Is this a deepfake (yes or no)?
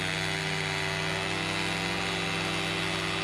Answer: no